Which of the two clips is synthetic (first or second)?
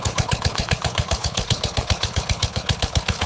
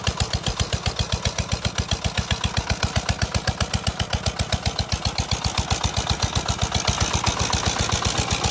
first